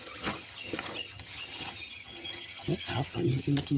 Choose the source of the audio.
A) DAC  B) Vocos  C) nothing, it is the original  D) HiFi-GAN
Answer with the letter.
D